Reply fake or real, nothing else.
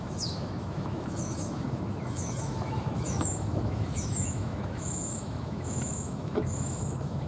fake